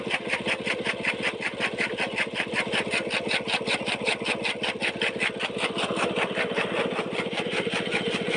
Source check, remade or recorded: recorded